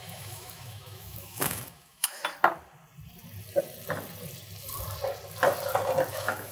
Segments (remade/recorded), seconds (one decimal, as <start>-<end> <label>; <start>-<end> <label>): 0.0-2.2 remade; 2.2-6.1 recorded; 6.1-6.5 remade